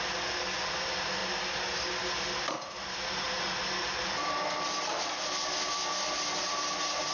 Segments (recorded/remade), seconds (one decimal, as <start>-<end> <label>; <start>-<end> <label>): 0.0-7.1 recorded